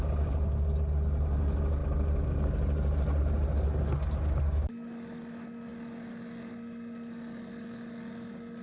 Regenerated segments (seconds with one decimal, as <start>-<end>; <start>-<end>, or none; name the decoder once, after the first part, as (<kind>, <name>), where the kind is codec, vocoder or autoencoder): none